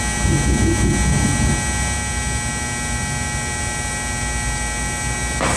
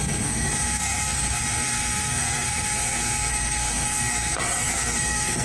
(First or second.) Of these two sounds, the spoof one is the second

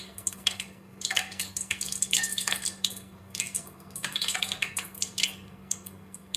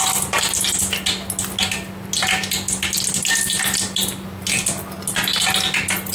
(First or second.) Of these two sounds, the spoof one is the first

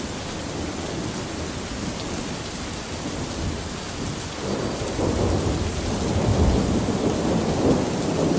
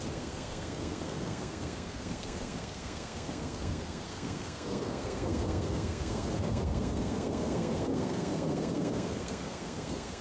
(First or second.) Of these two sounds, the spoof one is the second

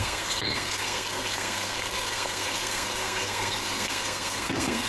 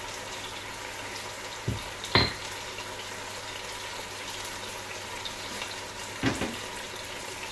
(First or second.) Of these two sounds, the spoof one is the first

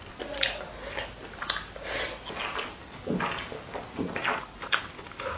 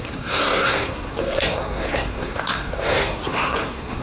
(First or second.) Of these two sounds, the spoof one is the second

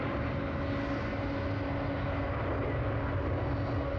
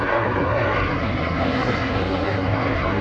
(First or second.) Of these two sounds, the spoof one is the second